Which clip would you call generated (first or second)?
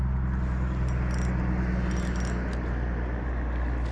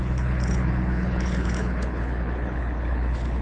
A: second